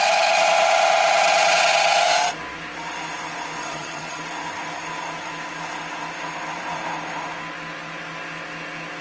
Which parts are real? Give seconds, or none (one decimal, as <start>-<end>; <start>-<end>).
0.0-3.6; 4.2-9.0